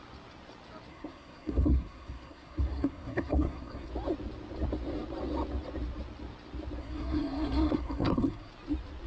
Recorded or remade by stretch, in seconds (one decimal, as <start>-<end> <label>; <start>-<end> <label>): 0.0-0.9 recorded; 0.9-3.9 remade; 3.9-6.8 recorded; 6.8-8.5 remade; 8.5-9.1 recorded